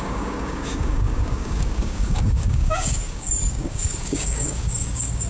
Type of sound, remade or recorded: remade